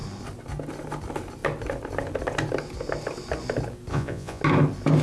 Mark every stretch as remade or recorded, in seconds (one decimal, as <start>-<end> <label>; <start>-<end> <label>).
0.0-3.9 recorded; 3.9-4.4 remade; 4.4-5.0 recorded